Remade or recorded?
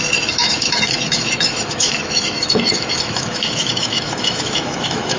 remade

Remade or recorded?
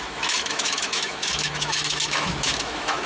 remade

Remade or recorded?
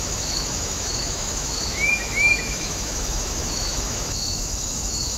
remade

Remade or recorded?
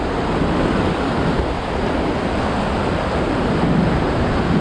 recorded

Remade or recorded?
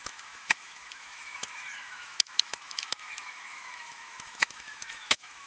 remade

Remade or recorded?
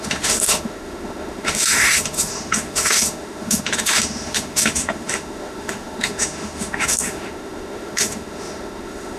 remade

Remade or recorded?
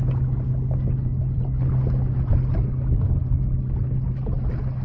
recorded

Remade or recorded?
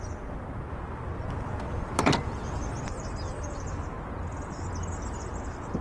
recorded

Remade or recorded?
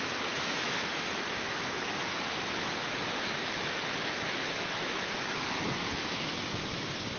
remade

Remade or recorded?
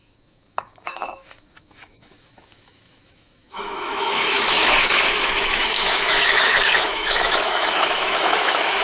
remade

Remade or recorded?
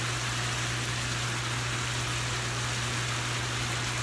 recorded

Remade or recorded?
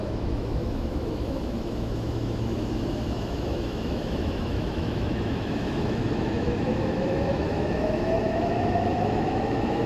remade